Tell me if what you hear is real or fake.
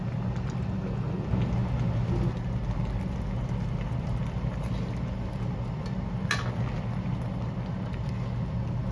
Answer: real